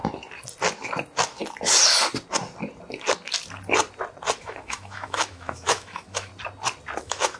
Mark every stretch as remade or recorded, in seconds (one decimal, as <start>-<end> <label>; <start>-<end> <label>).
0.0-4.4 recorded; 4.4-6.3 remade; 6.3-7.0 recorded; 7.0-7.4 remade